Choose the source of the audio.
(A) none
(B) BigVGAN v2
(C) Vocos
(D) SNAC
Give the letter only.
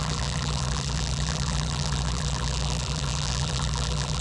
B